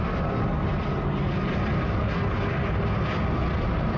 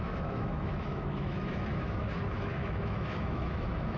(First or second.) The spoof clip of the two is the second